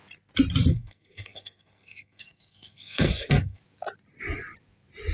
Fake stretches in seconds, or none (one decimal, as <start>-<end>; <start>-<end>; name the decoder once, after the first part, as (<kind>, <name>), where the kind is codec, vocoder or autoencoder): 0.7-3.6 (codec, SNAC)